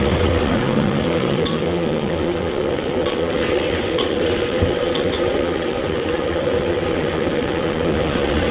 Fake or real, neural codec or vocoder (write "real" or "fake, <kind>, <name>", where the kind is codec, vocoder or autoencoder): fake, vocoder, WaveNeXt